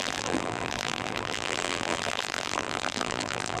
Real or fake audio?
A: fake